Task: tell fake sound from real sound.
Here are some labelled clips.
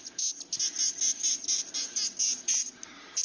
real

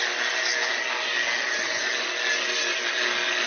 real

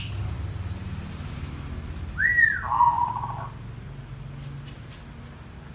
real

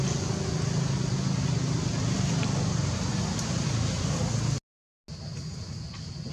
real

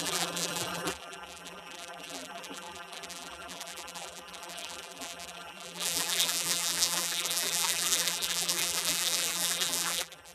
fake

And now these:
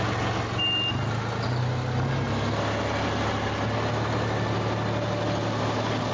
real